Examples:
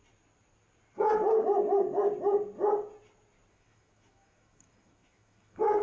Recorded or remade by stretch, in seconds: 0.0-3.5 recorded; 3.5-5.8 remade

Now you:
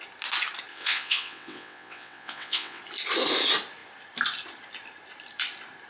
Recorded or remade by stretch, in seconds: 0.0-0.7 recorded; 0.7-2.8 remade; 2.8-5.9 recorded

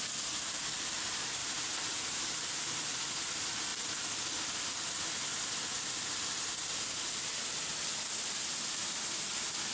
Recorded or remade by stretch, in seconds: 0.0-1.4 recorded; 1.4-3.3 remade; 3.3-9.7 recorded

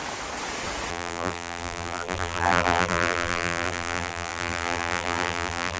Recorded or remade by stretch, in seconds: 0.0-0.9 recorded; 0.9-5.8 remade

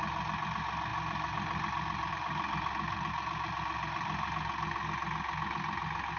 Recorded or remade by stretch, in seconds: 0.0-6.2 recorded

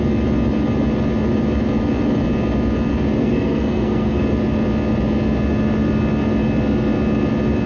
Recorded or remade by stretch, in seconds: 0.0-3.2 recorded; 3.2-4.2 remade; 4.2-7.7 recorded

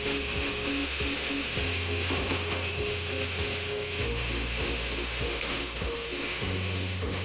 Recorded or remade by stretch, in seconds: 0.0-7.2 remade